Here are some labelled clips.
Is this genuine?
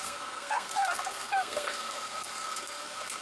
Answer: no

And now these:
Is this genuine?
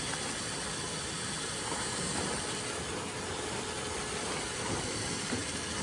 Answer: yes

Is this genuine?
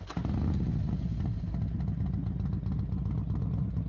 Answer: yes